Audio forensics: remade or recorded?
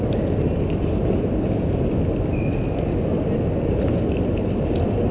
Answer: recorded